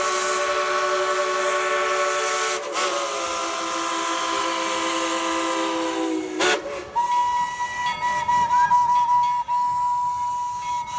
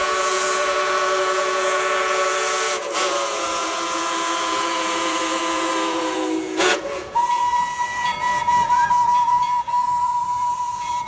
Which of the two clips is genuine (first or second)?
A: first